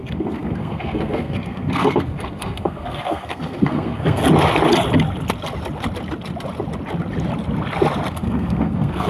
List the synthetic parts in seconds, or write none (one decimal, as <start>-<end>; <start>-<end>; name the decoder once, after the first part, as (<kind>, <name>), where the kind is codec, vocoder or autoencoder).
0.0-4.2 (codec, SNAC); 8.1-9.1